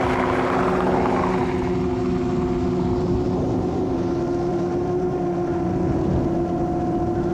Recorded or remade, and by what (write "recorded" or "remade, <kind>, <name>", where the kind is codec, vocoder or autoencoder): recorded